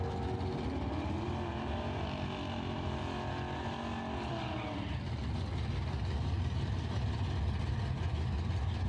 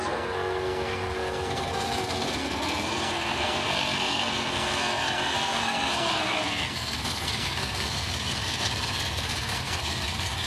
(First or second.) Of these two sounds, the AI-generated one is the second